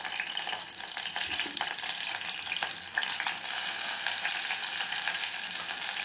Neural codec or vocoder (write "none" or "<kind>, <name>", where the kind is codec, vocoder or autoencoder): none